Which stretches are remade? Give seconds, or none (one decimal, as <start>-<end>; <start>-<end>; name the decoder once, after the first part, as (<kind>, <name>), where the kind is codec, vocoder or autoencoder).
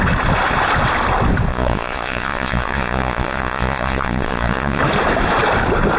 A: 1.5-4.8 (vocoder, Vocos)